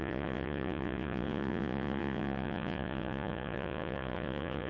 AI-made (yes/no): yes